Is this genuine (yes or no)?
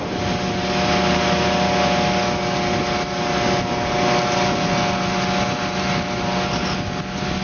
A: yes